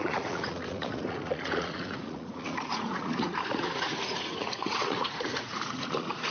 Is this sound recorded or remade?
remade